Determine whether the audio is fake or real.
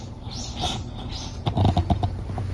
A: real